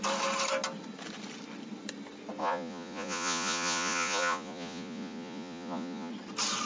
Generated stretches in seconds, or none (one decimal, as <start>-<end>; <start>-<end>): 2.4-6.1